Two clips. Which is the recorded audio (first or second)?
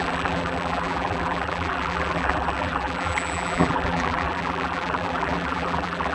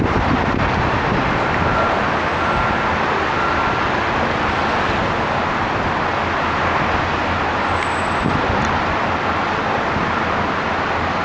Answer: second